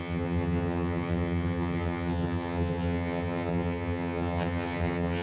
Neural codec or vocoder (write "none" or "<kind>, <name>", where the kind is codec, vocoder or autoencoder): vocoder, HiFi-GAN